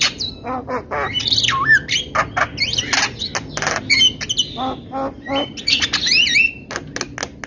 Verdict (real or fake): real